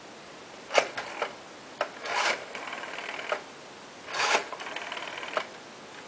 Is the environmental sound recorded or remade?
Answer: recorded